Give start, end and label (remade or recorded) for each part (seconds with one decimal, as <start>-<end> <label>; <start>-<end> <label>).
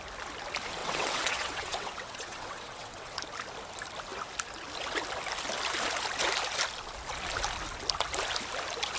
0.0-0.8 recorded; 0.8-3.2 remade; 3.2-9.0 recorded